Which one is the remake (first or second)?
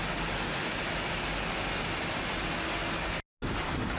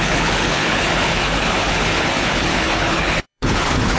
second